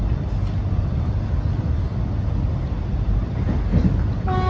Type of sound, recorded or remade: recorded